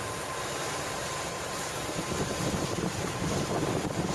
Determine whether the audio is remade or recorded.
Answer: remade